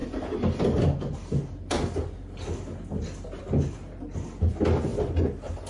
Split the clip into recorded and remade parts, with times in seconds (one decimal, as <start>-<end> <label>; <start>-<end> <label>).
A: 0.0-5.7 recorded